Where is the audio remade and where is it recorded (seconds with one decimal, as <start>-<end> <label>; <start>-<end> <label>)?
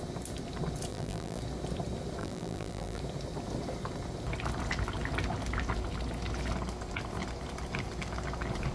0.0-0.9 recorded; 0.9-1.4 remade; 1.4-2.2 recorded; 2.2-3.0 remade; 3.0-8.7 recorded